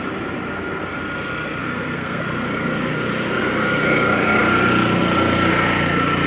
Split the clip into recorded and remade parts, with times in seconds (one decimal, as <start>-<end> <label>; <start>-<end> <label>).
0.0-1.6 recorded; 1.6-2.2 remade; 2.2-6.3 recorded